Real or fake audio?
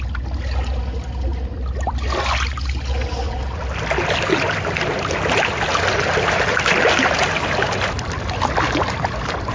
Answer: real